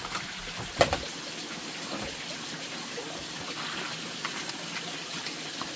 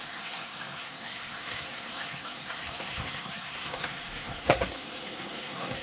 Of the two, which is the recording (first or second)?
first